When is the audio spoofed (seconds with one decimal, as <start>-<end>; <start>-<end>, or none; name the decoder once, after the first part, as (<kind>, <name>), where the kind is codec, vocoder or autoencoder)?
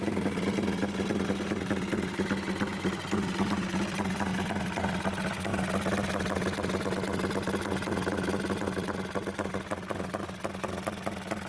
none